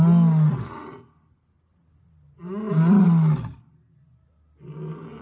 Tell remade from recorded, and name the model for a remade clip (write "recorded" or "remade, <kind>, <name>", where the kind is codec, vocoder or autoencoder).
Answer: recorded